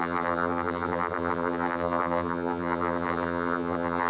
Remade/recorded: remade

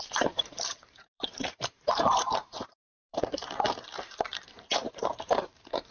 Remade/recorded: remade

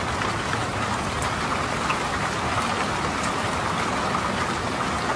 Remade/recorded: recorded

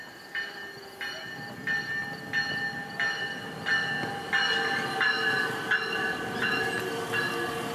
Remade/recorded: recorded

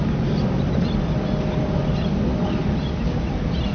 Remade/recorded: recorded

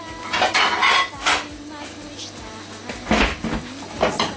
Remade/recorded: recorded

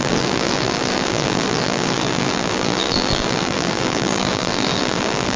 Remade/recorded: remade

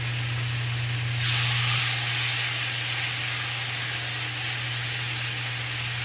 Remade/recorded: recorded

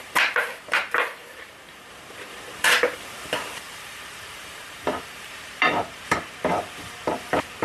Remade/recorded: remade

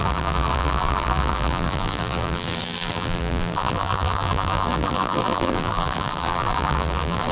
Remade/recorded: remade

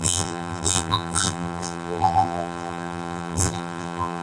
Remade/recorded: remade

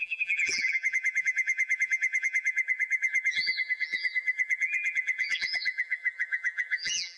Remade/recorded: remade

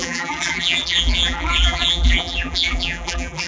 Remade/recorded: remade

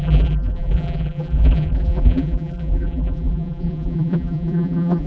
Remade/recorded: remade